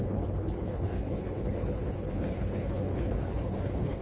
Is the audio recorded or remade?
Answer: remade